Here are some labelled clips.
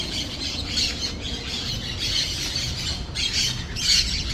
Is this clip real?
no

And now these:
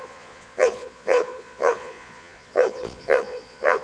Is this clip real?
no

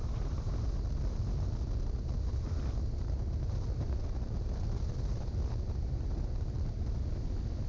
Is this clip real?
yes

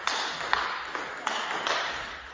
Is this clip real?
yes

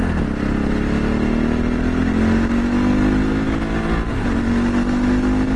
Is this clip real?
yes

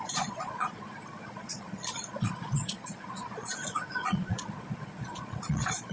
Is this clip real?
no